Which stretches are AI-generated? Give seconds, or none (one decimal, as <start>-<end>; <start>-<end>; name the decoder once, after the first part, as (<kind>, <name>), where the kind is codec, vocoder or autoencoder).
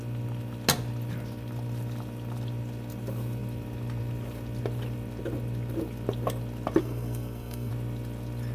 6.8-7.7 (codec, SNAC)